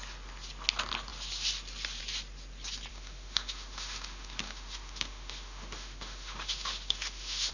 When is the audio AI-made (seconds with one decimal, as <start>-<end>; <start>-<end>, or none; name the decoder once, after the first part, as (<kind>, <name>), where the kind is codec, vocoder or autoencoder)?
2.9-7.5 (autoencoder, DAC-VAE)